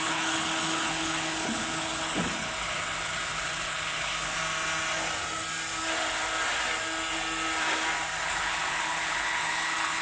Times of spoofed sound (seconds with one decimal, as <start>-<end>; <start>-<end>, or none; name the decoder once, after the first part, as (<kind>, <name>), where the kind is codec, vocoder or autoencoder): 0.0-4.4 (codec, HILCodec); 8.2-10.0